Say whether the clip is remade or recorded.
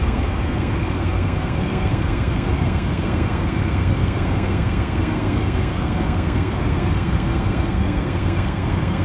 remade